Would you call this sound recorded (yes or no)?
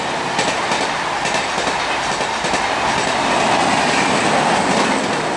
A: yes